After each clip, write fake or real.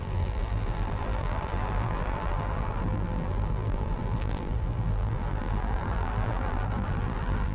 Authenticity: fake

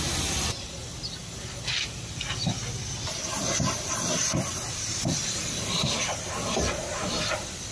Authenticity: real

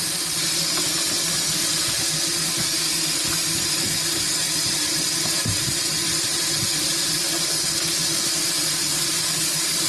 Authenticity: real